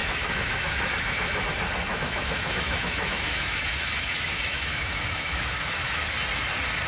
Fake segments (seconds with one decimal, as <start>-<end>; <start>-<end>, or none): 0.0-1.4; 1.9-6.0

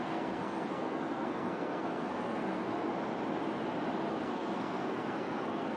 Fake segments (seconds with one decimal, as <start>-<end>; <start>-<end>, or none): 0.0-2.9; 4.1-5.8

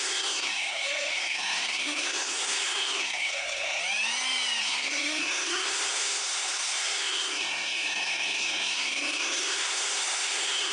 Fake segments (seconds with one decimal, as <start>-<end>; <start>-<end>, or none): 0.0-3.8; 4.6-10.7

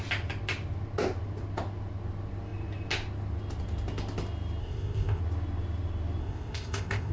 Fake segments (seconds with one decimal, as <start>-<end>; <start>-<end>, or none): 4.6-5.2; 6.2-7.1

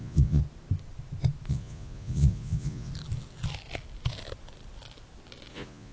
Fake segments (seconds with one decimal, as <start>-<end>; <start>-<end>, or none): 0.0-0.4; 1.5-2.9; 5.5-5.9